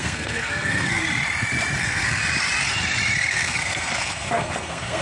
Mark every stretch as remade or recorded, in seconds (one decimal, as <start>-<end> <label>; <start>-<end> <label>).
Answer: 0.0-1.0 remade; 1.0-1.8 recorded; 1.8-2.2 remade; 2.2-3.3 recorded; 3.3-5.0 remade